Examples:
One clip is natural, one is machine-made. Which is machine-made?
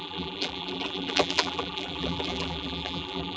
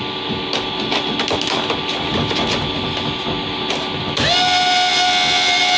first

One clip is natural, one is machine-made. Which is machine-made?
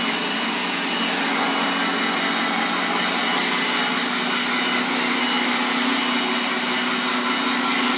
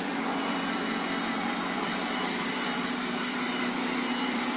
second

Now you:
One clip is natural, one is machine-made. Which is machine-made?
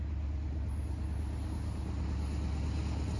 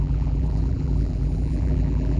second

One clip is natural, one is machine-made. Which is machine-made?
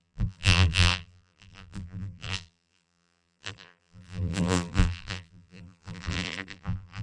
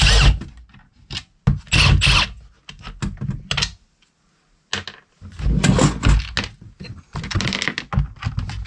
first